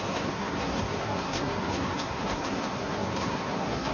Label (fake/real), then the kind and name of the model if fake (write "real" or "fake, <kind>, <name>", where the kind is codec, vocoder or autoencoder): fake, codec, SNAC